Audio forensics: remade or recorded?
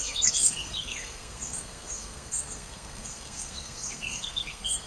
remade